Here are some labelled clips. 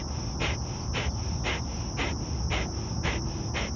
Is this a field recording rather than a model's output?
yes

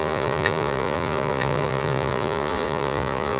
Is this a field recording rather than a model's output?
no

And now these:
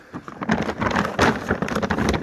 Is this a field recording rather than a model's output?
yes